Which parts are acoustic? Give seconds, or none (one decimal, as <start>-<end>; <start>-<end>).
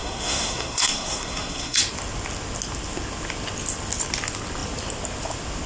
1.8-5.7